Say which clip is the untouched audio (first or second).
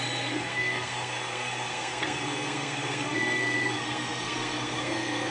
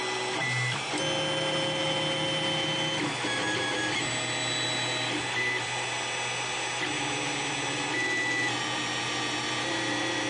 second